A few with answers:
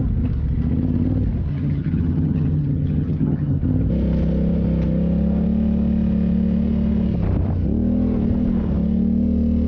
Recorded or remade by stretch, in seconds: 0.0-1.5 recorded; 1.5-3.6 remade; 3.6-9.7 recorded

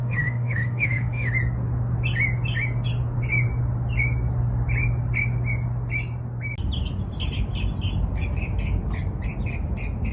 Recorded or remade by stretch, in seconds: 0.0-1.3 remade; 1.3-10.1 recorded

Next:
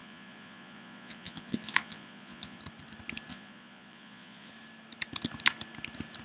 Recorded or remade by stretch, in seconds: 0.0-2.6 remade; 2.6-3.3 recorded; 3.3-4.5 remade; 4.5-6.2 recorded

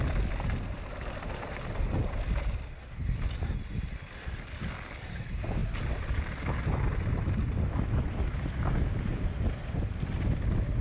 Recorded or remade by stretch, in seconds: 0.0-10.8 recorded

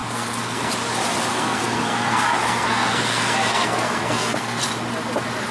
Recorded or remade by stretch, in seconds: 0.0-0.7 remade; 0.7-1.3 recorded; 1.3-4.6 remade; 4.6-5.5 recorded